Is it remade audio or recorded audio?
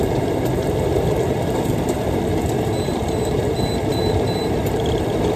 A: remade